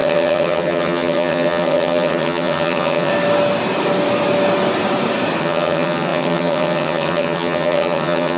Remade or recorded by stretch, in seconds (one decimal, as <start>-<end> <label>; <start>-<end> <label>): 0.0-3.1 remade; 3.1-5.4 recorded; 5.4-8.4 remade